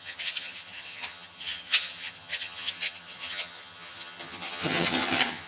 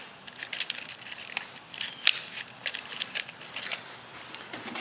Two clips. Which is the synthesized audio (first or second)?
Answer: first